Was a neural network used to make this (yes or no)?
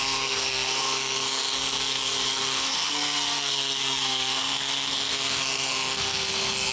yes